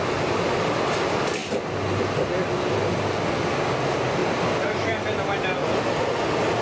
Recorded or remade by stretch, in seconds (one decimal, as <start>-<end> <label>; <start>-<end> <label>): 0.0-1.4 remade; 1.4-2.8 recorded; 2.8-4.2 remade; 4.2-6.6 recorded